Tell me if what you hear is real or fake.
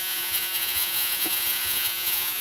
fake